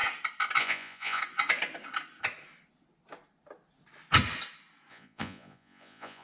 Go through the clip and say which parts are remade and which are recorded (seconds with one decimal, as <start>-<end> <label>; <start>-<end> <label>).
0.0-0.6 recorded; 0.6-1.2 remade; 1.2-4.9 recorded; 4.9-6.2 remade